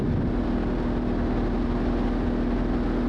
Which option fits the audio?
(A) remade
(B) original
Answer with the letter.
B